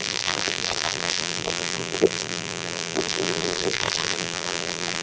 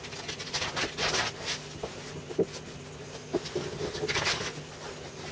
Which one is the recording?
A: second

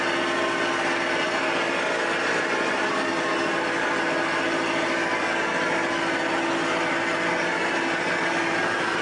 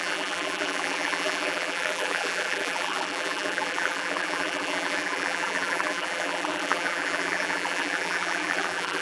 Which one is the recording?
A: first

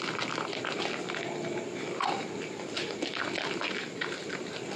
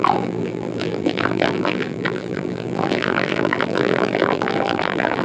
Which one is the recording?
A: first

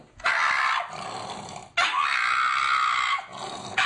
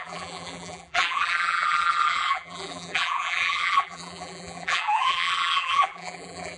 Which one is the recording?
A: first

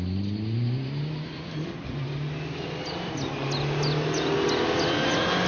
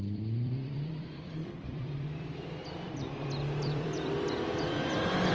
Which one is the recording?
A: first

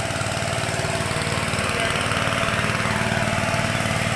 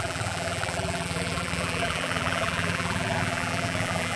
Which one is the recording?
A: first